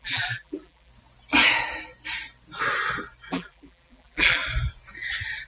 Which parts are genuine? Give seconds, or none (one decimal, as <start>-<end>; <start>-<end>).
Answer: 0.9-3.3; 4.4-5.5